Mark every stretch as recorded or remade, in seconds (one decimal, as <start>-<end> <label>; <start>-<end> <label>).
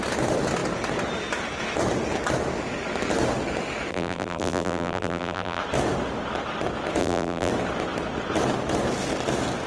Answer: 0.0-3.9 recorded; 3.9-5.6 remade; 5.6-7.0 recorded; 7.0-7.5 remade; 7.5-9.7 recorded